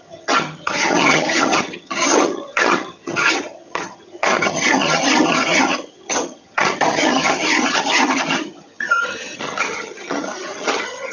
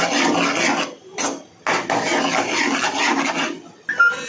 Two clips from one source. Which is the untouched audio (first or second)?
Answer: second